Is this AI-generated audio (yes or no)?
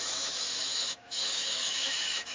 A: yes